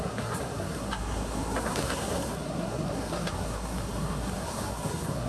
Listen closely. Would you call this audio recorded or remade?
remade